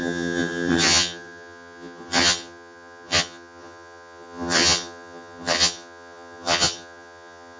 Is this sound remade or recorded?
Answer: remade